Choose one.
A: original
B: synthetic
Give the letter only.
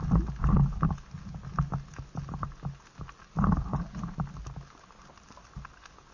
A